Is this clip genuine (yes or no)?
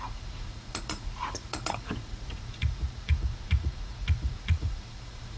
no